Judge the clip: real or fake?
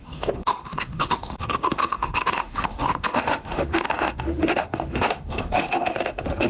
fake